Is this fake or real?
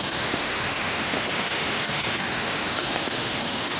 fake